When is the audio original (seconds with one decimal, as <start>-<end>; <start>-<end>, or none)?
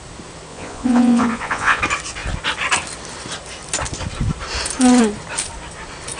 0.0-0.5; 1.8-6.2